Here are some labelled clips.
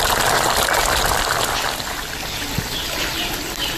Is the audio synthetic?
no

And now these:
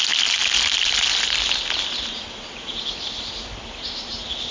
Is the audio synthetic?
no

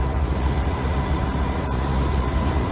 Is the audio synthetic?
yes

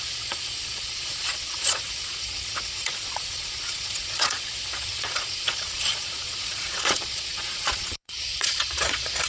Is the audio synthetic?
yes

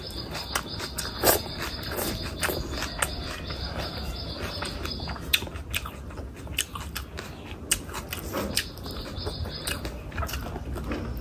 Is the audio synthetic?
no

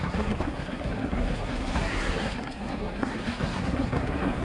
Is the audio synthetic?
yes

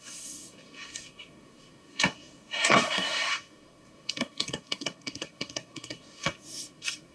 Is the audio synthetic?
yes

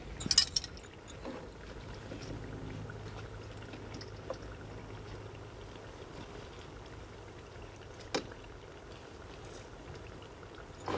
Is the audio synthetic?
no